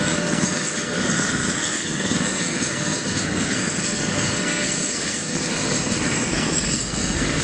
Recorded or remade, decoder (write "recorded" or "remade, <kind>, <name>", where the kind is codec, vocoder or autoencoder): remade, codec, SNAC